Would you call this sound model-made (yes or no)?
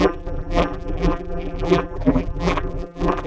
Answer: yes